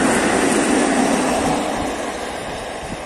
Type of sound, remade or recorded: recorded